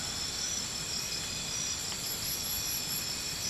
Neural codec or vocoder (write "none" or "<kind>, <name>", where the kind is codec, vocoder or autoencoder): none